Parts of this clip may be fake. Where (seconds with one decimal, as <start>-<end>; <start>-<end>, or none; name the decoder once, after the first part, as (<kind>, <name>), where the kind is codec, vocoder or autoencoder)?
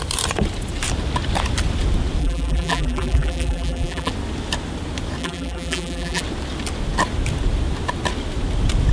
2.2-4.1 (vocoder, BigVGAN v2); 5.2-6.2